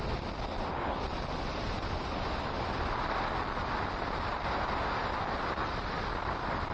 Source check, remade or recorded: recorded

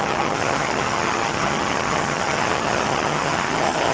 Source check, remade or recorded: remade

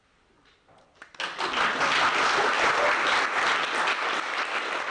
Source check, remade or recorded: recorded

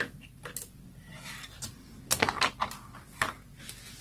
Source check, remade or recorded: recorded